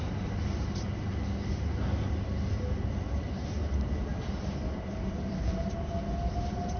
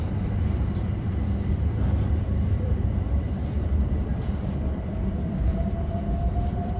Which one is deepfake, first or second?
second